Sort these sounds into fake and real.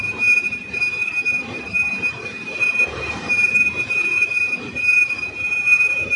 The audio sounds fake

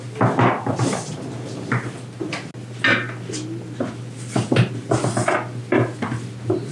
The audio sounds real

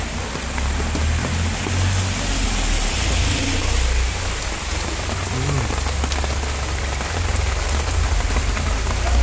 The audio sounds real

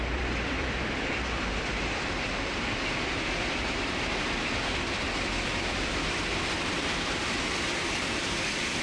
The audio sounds fake